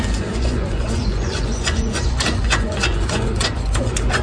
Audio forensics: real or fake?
fake